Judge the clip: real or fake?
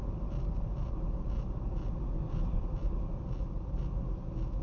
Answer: real